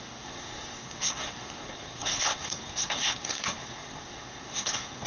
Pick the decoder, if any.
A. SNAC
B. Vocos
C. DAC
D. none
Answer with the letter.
A